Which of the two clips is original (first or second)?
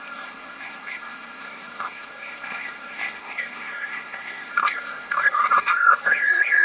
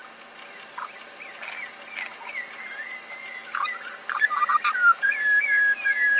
second